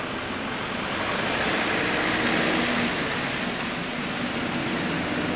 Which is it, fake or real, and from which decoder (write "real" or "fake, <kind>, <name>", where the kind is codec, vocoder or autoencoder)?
real